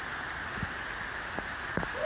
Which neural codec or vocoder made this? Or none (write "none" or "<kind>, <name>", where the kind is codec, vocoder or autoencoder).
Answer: none